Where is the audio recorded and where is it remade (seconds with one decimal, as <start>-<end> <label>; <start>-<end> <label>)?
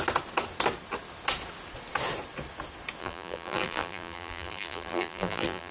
0.0-3.0 recorded; 3.0-5.7 remade